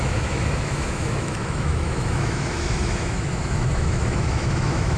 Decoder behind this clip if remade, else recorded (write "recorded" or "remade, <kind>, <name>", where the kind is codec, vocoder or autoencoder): remade, autoencoder, DAC-VAE